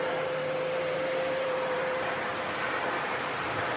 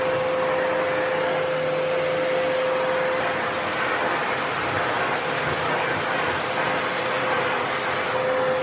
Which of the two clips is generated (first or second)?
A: first